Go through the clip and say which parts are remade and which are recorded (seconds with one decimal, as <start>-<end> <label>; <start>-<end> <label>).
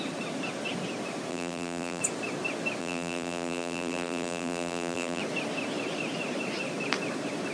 0.0-1.3 recorded; 1.3-2.0 remade; 2.0-2.8 recorded; 2.8-5.2 remade; 5.2-7.5 recorded